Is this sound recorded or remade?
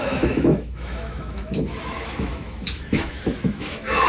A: remade